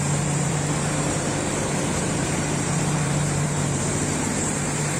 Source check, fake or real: fake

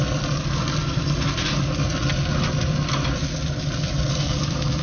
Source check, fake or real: real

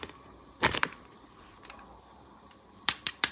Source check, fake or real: fake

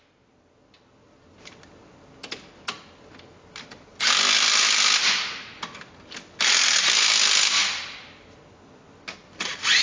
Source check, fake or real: real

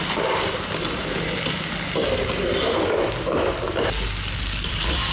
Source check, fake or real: real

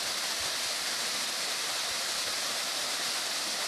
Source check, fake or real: real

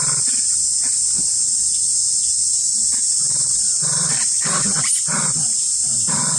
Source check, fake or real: real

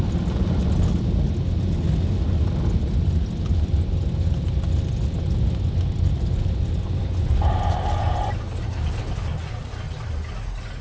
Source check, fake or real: real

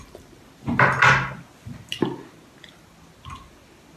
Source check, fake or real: real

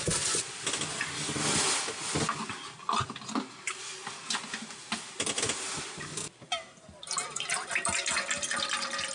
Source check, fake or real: real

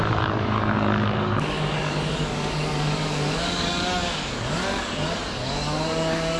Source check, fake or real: fake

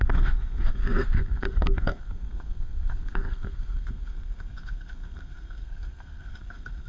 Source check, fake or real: fake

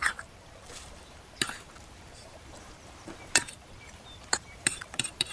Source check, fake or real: fake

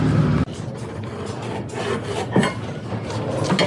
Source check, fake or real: real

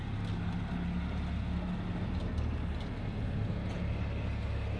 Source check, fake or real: real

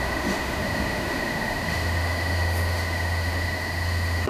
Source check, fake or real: fake